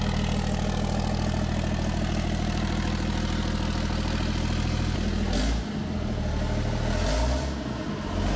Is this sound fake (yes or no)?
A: no